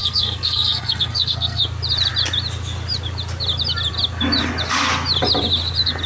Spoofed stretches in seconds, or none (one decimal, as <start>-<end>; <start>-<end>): 0.0-1.6